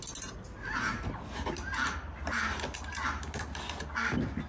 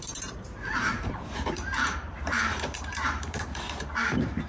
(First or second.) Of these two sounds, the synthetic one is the second